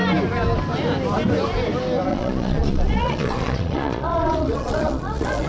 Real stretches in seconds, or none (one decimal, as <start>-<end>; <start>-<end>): 0.0-2.1